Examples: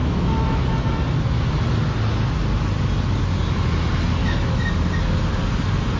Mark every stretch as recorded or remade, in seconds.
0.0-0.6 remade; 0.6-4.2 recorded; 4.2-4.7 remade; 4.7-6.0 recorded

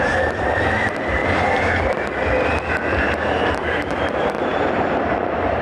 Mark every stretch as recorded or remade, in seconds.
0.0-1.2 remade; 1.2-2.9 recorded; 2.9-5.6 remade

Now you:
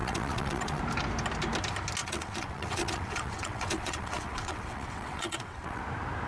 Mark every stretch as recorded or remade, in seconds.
0.0-0.8 remade; 0.8-2.0 recorded; 2.0-5.8 remade; 5.8-6.3 recorded

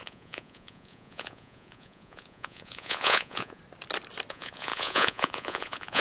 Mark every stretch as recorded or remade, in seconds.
0.0-3.6 remade; 3.6-4.3 recorded; 4.3-6.0 remade

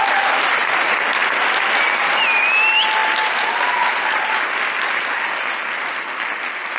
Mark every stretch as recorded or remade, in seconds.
0.0-6.8 recorded

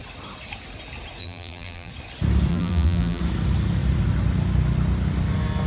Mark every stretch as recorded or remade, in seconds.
0.0-1.2 recorded; 1.2-1.9 remade; 1.9-2.5 recorded; 2.5-3.2 remade; 3.2-5.7 recorded